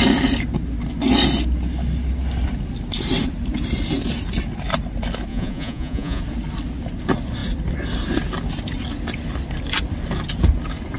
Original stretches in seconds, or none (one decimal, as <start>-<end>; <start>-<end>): 0.0-5.3; 6.2-11.0